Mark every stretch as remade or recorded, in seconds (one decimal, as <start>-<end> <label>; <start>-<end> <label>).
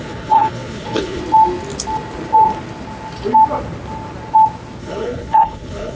0.0-1.2 remade; 1.2-4.8 recorded; 4.8-6.0 remade